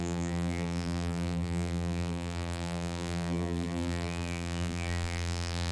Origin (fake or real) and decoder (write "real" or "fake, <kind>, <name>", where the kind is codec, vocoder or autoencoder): fake, vocoder, BigVGAN v2